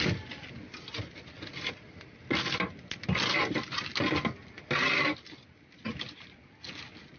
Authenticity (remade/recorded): recorded